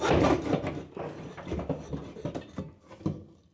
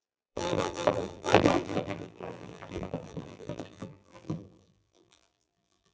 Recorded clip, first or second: first